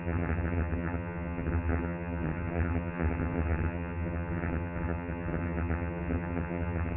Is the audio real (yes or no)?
no